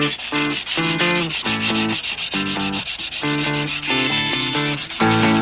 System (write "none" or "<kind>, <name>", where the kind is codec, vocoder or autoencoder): none